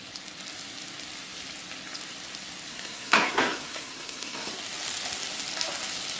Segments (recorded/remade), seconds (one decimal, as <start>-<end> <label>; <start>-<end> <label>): 0.0-2.7 recorded; 2.7-4.5 remade; 4.5-6.2 recorded